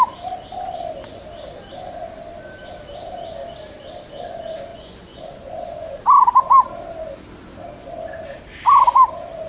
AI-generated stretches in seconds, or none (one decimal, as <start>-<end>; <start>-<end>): 4.7-6.0